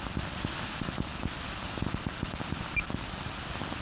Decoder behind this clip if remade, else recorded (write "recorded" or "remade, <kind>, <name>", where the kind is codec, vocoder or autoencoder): remade, vocoder, BigVGAN v2